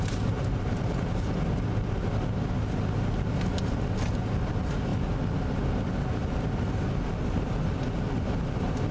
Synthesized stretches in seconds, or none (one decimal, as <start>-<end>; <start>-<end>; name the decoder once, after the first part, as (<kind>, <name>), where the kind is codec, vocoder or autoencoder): none

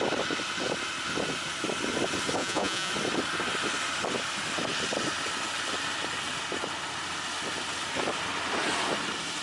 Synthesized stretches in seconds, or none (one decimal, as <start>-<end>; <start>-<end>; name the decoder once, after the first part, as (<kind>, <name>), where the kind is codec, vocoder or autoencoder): 2.4-2.9 (vocoder, Vocos)

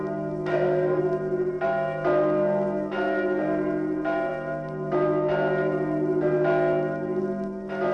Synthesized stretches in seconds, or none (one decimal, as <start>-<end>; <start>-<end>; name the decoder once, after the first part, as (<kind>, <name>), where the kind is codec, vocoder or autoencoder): 0.5-1.0 (codec, SNAC)

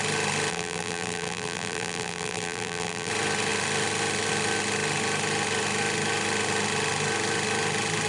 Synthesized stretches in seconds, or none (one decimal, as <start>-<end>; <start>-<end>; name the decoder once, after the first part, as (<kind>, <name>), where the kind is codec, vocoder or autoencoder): 0.5-3.1 (vocoder, BigVGAN v2)

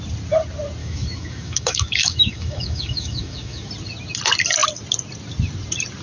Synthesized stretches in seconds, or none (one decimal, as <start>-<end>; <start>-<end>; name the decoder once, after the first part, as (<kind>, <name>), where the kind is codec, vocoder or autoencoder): 0.8-3.7 (autoencoder, DAC-VAE)

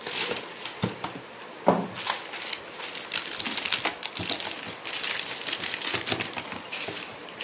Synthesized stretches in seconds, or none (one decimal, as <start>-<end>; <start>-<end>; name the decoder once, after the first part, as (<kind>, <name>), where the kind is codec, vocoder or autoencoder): none

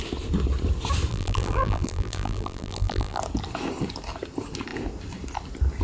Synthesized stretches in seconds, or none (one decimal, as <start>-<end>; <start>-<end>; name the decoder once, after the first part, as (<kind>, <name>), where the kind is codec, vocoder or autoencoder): 1.1-3.2 (vocoder, BigVGAN v2)

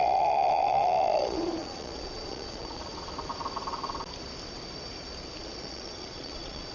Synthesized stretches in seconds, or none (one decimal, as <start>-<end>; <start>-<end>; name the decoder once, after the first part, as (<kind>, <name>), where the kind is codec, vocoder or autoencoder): 0.0-2.9 (vocoder, Vocos); 5.4-6.7